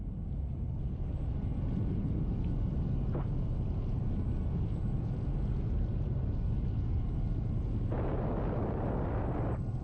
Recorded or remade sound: recorded